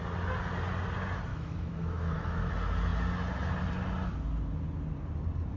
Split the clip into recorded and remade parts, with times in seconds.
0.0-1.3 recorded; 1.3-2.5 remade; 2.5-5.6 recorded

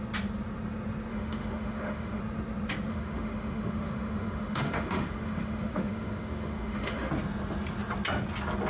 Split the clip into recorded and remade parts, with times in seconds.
0.0-1.1 recorded; 1.1-2.2 remade; 2.2-2.9 recorded; 2.9-7.1 remade; 7.1-8.7 recorded

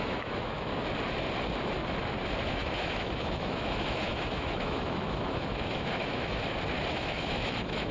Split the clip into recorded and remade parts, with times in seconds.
0.0-0.7 remade; 0.7-2.5 recorded; 2.5-6.4 remade; 6.4-6.9 recorded; 6.9-7.9 remade

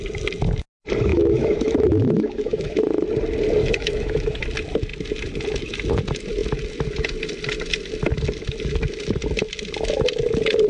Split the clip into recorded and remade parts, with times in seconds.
0.0-1.1 recorded; 1.1-2.8 remade; 2.8-3.6 recorded; 3.6-4.4 remade; 4.4-10.7 recorded